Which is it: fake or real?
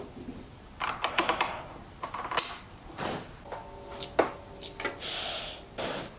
real